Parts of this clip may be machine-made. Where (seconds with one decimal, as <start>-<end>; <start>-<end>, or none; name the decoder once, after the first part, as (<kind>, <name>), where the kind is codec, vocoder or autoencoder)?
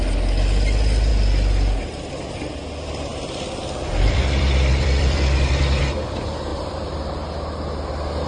3.1-5.8 (vocoder, BigVGAN v2); 6.5-7.0